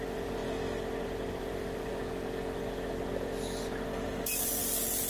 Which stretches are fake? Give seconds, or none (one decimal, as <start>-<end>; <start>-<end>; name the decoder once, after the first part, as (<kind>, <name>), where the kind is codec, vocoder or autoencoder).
0.0-0.4 (vocoder, BigVGAN v2); 1.4-1.9; 4.1-5.1